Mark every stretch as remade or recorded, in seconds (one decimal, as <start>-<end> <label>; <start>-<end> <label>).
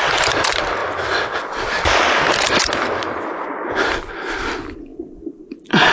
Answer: 0.0-4.9 recorded; 4.9-5.9 remade